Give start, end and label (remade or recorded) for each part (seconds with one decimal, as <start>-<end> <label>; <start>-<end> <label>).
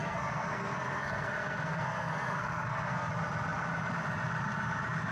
0.0-3.1 remade; 3.1-5.1 recorded